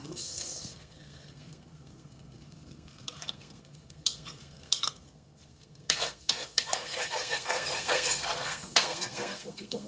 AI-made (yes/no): yes